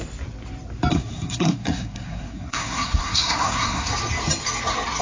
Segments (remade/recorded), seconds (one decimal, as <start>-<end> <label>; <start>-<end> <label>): 0.0-0.9 recorded; 0.9-3.9 remade; 3.9-5.0 recorded